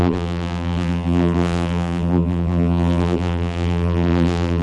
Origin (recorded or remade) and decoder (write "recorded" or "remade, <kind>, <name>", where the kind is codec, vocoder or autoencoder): remade, vocoder, BigVGAN v2